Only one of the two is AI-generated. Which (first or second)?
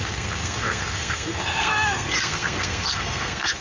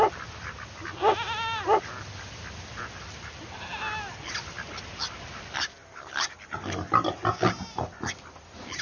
first